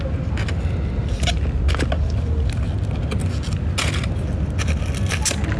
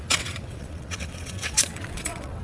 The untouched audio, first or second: first